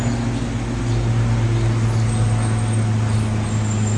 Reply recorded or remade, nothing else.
recorded